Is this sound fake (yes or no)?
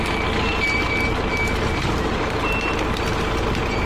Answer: no